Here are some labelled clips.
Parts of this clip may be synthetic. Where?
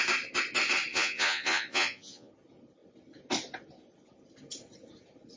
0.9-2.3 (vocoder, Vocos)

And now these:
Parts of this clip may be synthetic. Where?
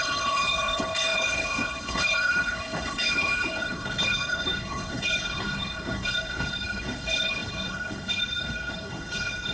0.0-9.5 (codec, HILCodec)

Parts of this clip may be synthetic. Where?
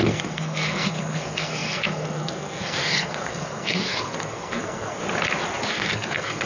0.0-5.0 (codec, SNAC); 5.7-6.5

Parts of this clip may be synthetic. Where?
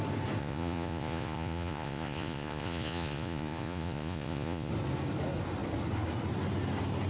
0.4-4.7 (vocoder, Vocos)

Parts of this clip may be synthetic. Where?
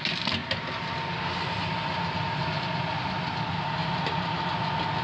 3.8-4.4 (vocoder, BigVGAN v2)